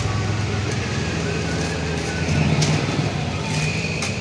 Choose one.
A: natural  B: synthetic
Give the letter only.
A